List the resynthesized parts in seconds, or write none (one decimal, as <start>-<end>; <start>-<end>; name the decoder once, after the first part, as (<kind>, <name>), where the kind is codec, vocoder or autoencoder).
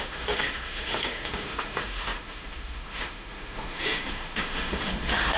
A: 0.0-5.4 (autoencoder, DAC-VAE)